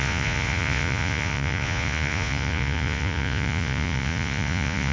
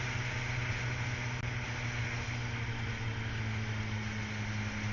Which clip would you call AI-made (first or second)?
first